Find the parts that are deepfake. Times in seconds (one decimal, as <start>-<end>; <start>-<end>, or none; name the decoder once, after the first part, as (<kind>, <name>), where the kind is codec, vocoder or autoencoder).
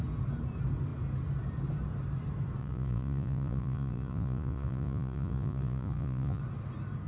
2.6-6.4 (vocoder, Vocos)